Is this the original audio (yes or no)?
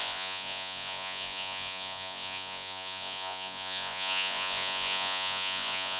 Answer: no